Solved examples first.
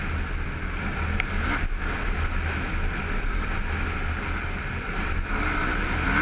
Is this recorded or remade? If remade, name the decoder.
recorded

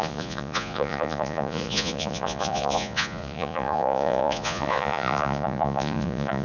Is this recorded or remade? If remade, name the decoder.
remade, vocoder, Vocos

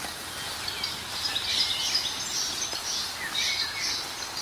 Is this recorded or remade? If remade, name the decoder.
recorded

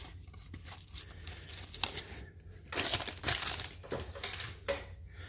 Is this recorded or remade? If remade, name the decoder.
recorded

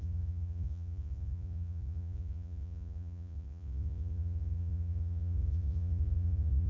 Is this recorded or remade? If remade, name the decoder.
remade, vocoder, Vocos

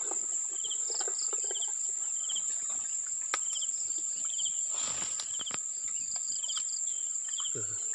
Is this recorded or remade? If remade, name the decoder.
recorded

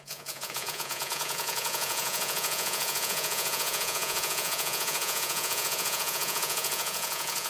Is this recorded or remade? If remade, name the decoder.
remade, vocoder, Vocos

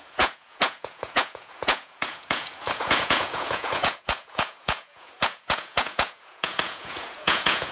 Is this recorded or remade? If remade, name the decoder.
remade, vocoder, Vocos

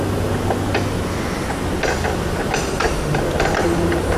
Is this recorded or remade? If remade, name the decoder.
recorded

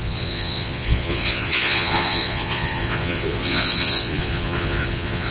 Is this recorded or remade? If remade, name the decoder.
remade, vocoder, Vocos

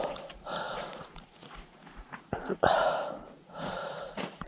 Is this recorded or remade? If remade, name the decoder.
remade, vocoder, Vocos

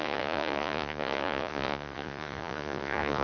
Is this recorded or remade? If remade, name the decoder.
remade, vocoder, Vocos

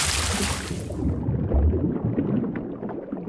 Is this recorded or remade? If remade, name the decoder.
recorded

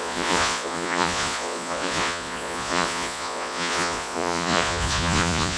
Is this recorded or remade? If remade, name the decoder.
remade, vocoder, Vocos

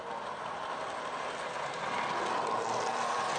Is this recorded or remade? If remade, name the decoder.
recorded